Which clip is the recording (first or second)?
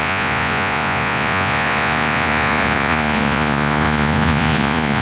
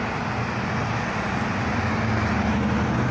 second